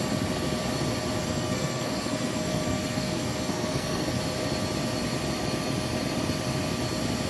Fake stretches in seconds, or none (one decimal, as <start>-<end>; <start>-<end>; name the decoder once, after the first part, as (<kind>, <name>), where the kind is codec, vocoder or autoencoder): 1.2-4.1 (codec, SNAC)